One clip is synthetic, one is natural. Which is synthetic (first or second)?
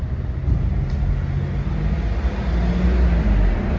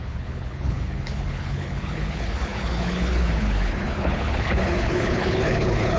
second